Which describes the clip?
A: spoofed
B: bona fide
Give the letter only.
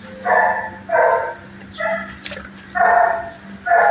B